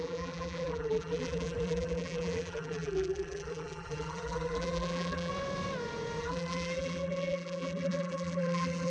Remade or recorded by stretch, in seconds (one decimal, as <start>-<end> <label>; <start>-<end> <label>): 0.0-5.3 remade; 5.3-6.2 recorded; 6.2-8.9 remade